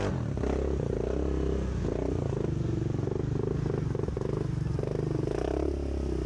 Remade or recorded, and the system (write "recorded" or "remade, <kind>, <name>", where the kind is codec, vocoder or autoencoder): recorded